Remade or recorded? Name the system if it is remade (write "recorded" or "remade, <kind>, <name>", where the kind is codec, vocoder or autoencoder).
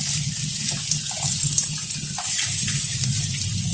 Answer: recorded